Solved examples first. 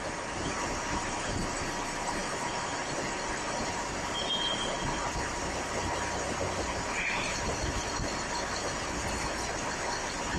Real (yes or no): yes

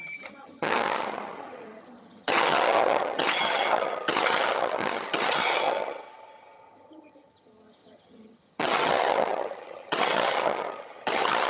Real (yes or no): no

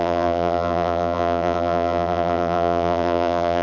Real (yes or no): no